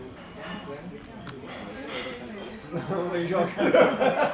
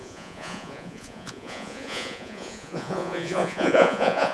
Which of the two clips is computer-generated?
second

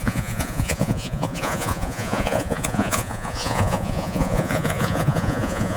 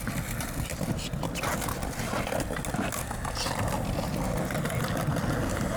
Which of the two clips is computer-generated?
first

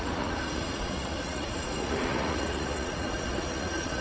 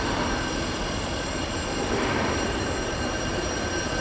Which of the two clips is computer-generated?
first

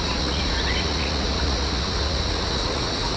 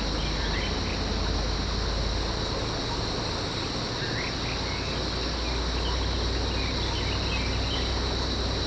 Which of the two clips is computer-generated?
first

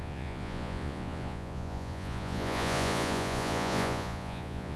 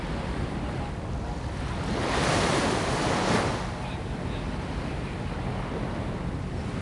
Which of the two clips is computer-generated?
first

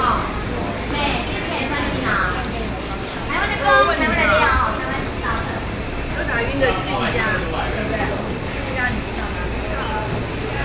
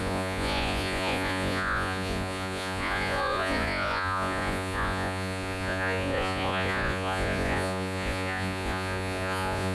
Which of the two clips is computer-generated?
second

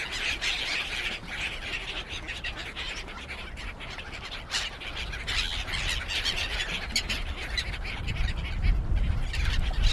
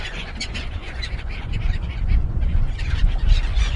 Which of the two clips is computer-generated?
second